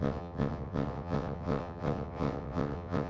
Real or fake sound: fake